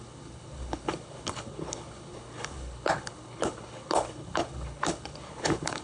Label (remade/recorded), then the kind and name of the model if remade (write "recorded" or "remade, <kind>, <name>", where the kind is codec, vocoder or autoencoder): remade, codec, HILCodec